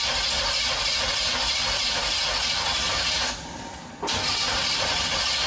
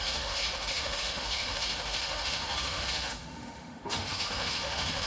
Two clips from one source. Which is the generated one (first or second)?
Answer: second